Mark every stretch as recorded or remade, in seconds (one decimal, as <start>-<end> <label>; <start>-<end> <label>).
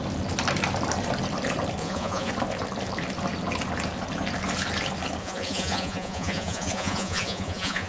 0.0-1.8 recorded; 1.8-2.3 remade; 2.3-5.2 recorded; 5.2-7.9 remade